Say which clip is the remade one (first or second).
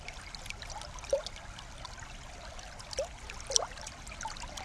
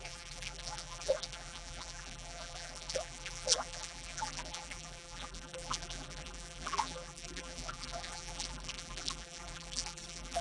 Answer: second